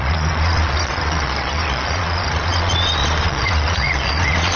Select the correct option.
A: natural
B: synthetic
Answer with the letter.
B